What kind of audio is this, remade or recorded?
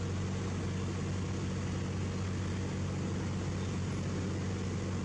recorded